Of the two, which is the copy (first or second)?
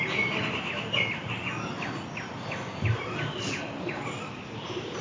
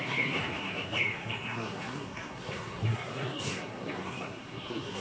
second